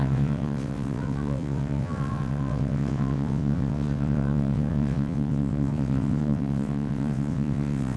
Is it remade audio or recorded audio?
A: remade